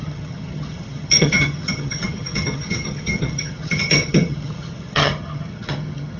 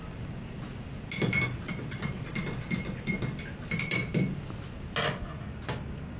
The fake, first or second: first